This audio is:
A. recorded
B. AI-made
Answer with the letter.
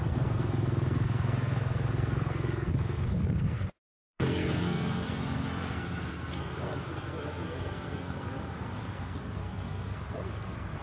B